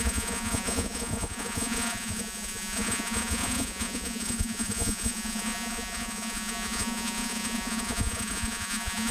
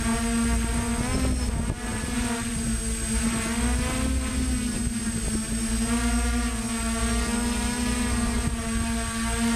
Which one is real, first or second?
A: second